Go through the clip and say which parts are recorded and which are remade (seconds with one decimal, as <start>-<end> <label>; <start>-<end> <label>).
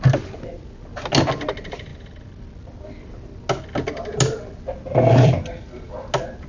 0.0-6.5 recorded